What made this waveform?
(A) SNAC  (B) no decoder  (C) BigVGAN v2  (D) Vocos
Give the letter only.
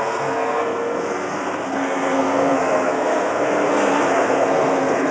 A